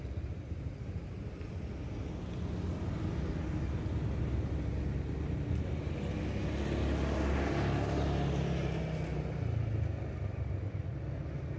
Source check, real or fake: real